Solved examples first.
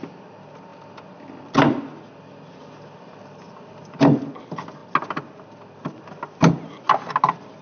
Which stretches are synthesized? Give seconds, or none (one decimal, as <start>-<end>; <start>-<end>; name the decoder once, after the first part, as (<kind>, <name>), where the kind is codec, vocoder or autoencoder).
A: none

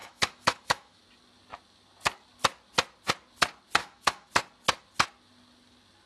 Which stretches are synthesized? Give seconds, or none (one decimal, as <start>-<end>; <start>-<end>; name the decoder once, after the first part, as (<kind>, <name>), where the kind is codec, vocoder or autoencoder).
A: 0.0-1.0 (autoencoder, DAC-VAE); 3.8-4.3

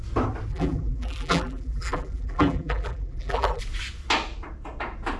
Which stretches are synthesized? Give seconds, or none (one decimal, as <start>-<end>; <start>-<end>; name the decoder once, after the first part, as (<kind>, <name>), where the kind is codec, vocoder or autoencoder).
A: 0.5-3.6 (vocoder, BigVGAN v2)

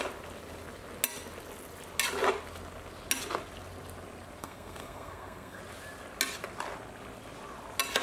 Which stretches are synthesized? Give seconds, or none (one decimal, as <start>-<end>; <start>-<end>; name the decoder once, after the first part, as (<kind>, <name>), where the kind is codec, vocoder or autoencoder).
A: 4.4-5.6 (codec, SNAC)

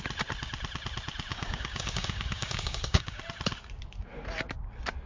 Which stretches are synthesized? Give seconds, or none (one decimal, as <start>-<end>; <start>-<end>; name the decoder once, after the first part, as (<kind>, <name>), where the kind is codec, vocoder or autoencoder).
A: 1.3-3.2 (codec, DAC)

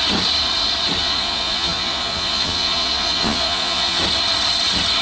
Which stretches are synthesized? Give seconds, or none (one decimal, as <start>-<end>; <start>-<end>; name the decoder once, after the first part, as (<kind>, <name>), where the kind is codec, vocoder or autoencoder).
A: 1.0-4.0 (vocoder, Vocos)

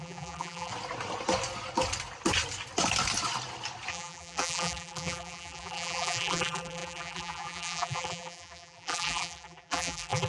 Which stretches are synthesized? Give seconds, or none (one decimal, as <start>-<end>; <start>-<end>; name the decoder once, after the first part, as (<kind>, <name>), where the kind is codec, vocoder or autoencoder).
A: 0.0-0.7 (vocoder, BigVGAN v2); 3.9-10.3